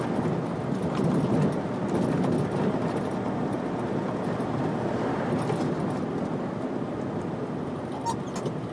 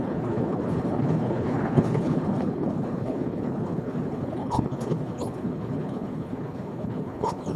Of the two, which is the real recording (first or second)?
first